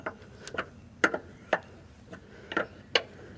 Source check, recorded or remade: recorded